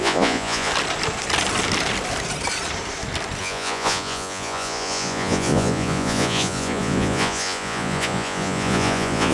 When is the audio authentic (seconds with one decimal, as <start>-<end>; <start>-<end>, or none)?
0.7-3.4